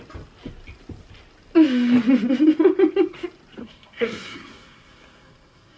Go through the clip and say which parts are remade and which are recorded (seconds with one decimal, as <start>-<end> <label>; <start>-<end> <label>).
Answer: 0.0-3.6 recorded; 3.6-5.8 remade